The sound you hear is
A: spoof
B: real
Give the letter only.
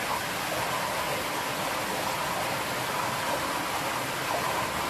B